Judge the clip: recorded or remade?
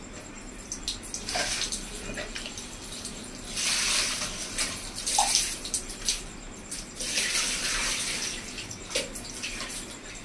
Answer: remade